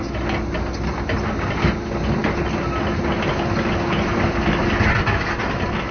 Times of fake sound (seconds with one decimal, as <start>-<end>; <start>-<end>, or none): none